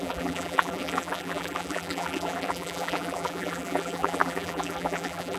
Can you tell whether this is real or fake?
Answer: fake